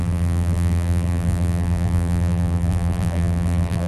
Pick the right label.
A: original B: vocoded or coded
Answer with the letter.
B